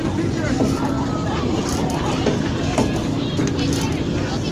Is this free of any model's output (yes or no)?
no